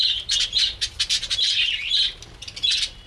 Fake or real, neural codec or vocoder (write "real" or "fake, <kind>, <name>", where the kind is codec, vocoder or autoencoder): real